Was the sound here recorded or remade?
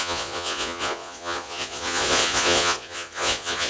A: remade